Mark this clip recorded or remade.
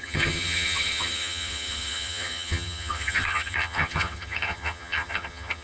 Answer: remade